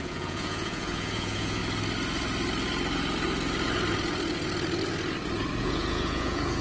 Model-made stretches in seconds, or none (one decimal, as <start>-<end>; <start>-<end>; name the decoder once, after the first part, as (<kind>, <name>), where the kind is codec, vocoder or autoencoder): 0.0-1.6 (vocoder, Vocos); 5.6-6.6